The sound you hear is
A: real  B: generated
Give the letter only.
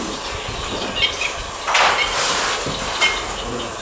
A